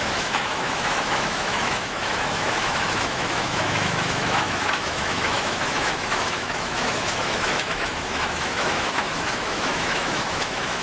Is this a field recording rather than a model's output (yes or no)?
no